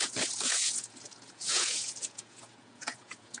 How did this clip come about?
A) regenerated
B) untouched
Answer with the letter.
A